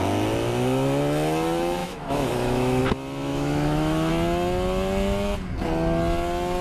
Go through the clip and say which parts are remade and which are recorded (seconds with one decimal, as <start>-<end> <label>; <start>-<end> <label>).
0.0-1.8 recorded; 1.8-2.8 remade; 2.8-3.3 recorded; 3.3-4.1 remade; 4.1-6.6 recorded